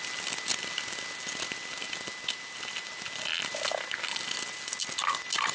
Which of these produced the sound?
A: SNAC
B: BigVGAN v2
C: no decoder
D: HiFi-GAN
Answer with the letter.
C